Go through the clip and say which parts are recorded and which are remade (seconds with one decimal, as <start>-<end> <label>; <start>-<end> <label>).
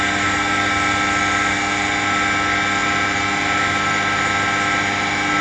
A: 0.0-5.4 recorded